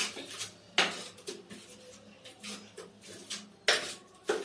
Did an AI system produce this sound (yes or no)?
no